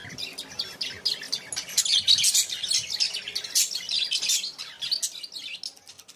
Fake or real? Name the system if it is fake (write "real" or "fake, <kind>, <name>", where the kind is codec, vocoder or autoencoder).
real